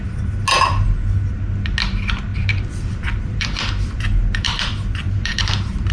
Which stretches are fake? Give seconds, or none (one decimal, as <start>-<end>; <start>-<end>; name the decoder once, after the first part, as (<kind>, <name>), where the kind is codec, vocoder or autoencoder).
2.3-5.9 (vocoder, BigVGAN v2)